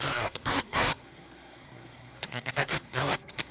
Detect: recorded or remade remade